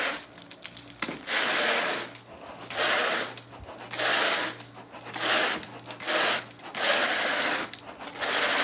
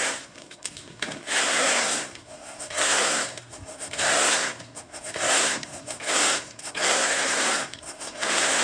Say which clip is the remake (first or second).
second